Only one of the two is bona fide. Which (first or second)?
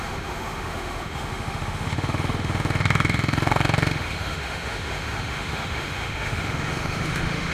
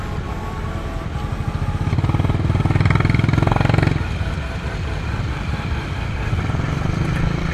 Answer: second